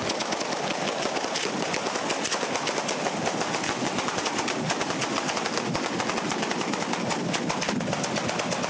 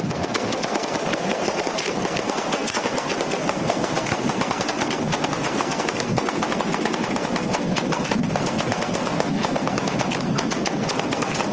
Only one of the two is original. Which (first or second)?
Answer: first